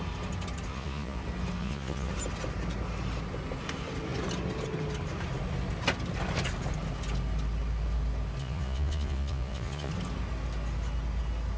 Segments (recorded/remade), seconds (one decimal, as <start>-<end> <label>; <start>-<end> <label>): 0.0-0.7 recorded; 0.7-1.2 remade; 1.2-1.6 recorded; 1.6-2.1 remade; 2.1-8.4 recorded; 8.4-9.9 remade; 9.9-11.6 recorded